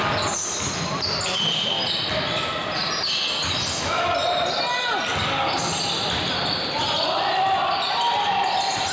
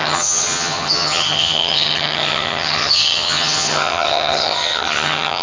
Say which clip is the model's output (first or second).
second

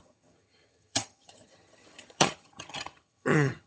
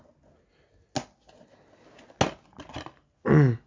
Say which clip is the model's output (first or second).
first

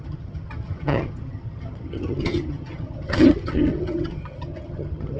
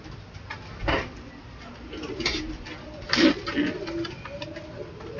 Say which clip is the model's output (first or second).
first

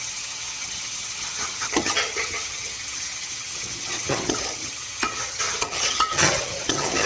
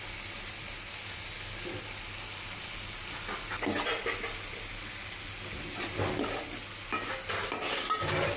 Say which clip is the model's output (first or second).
first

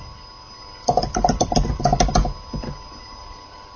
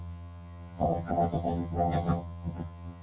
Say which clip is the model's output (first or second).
second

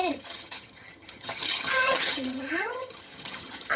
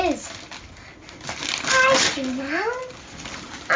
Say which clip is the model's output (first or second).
first